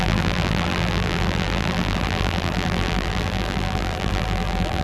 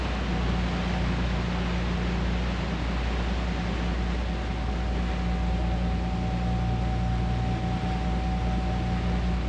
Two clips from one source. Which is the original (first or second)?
second